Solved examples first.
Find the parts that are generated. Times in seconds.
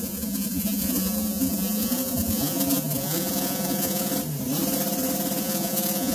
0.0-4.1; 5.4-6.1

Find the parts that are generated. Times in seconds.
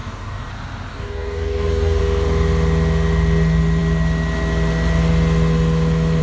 0.0-0.5; 0.9-2.0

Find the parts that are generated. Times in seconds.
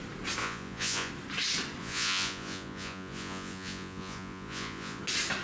0.4-1.1; 1.8-5.0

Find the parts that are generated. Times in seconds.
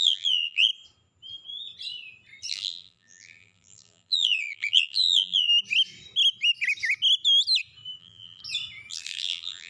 0.0-0.7; 2.5-5.5; 8.0-8.4; 8.9-9.7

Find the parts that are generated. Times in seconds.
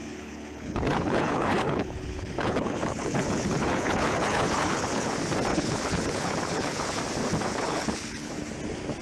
0.0-5.1; 5.5-7.0; 7.5-8.3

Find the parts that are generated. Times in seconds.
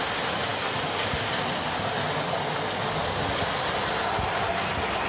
none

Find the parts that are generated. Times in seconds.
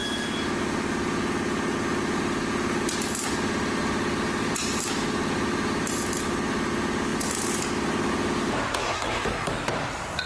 8.8-9.5